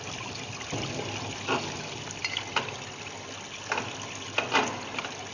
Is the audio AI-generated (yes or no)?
no